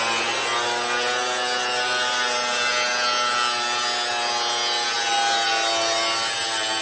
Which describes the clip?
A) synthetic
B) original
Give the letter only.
B